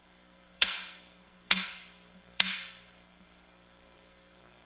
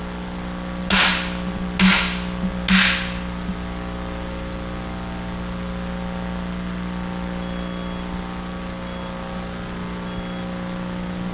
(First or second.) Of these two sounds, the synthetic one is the first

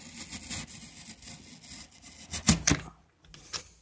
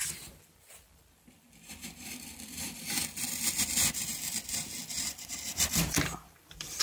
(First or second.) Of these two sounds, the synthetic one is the second